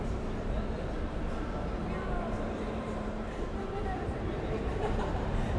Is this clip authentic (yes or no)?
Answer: no